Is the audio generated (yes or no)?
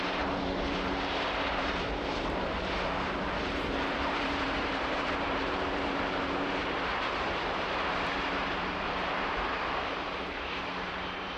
yes